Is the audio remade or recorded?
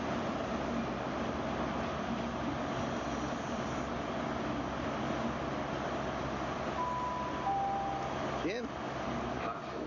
recorded